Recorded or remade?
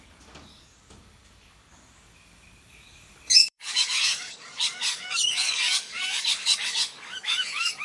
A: remade